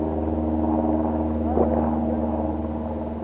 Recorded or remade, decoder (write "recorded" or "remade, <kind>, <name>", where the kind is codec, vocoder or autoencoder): recorded